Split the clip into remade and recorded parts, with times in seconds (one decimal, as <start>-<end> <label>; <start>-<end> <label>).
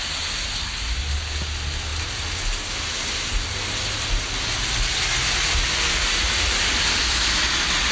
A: 0.0-7.9 recorded